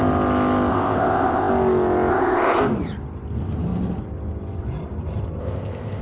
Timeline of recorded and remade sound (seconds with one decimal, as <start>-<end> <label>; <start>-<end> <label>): 0.0-0.7 recorded; 0.7-1.5 remade; 1.5-2.1 recorded; 2.1-2.6 remade; 2.6-5.4 recorded; 5.4-6.0 remade